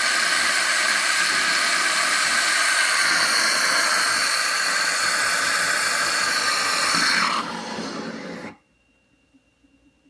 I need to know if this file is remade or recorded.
recorded